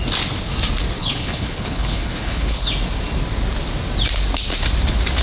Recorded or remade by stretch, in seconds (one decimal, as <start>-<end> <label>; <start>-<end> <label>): 0.0-1.0 recorded; 1.0-2.7 remade; 2.7-5.2 recorded